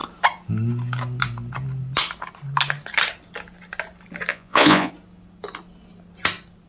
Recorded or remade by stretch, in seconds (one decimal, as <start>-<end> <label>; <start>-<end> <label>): 0.0-4.3 recorded; 4.3-4.9 remade; 4.9-6.7 recorded